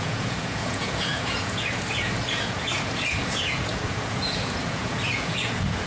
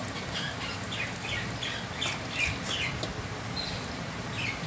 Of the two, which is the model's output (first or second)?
first